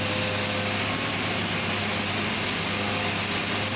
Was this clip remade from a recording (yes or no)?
no